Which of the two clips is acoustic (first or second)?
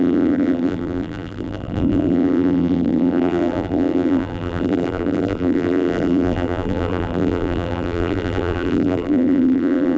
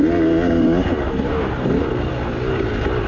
second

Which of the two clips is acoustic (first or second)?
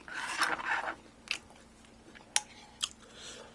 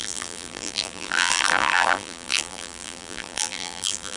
first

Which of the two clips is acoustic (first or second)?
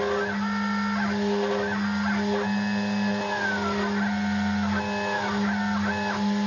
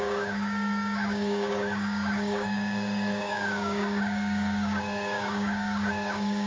first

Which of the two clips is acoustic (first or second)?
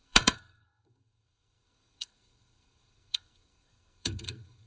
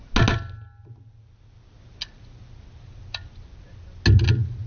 second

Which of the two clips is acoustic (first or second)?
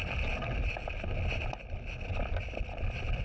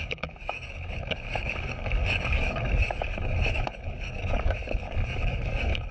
first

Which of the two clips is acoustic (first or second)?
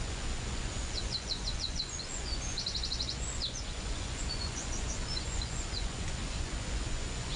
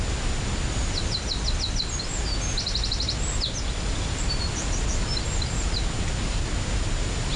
second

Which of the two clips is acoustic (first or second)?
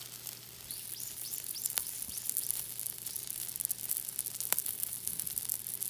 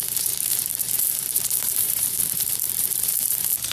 first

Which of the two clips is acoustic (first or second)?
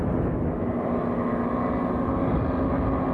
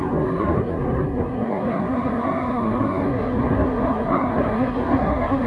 first